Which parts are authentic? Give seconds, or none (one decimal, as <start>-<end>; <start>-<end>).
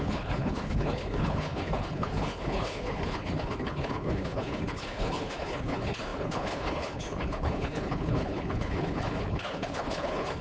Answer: none